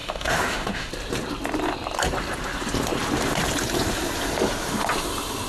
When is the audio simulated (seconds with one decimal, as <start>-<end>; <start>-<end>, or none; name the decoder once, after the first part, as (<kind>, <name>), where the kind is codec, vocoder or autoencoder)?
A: 0.0-0.9 (autoencoder, DAC-VAE)